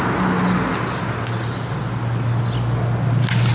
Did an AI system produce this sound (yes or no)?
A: no